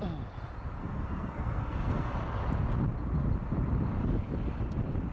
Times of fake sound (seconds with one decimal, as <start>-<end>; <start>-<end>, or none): 0.8-2.1